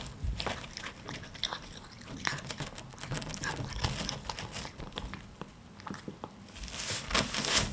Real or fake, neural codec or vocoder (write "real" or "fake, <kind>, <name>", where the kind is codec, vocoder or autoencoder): real